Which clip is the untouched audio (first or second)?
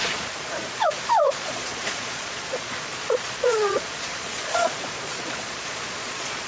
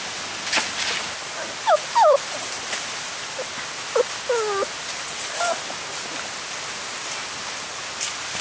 second